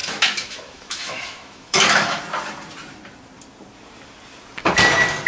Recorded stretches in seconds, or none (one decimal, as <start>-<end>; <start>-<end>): 2.2-5.3